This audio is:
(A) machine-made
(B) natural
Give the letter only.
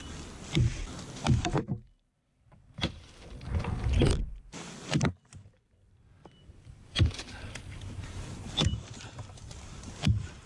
A